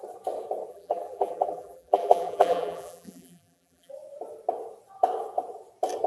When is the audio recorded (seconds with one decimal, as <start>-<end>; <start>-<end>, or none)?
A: 0.0-0.7; 3.9-6.1